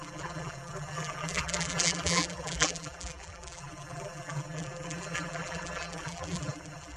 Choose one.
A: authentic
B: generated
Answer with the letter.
B